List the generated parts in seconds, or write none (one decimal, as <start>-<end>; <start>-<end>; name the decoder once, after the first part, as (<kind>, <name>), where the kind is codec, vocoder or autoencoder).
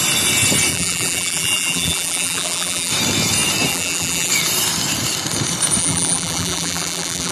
0.7-2.9 (vocoder, BigVGAN v2); 3.7-4.3; 5.8-7.3